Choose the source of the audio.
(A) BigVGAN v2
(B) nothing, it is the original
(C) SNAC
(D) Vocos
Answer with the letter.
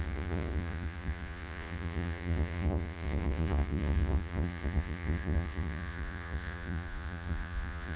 D